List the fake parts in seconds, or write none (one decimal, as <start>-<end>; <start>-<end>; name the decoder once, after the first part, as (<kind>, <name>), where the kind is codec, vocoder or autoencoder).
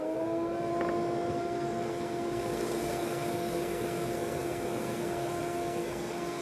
0.0-0.7 (codec, SNAC); 1.3-6.4